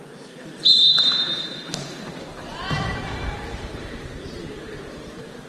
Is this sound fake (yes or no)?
yes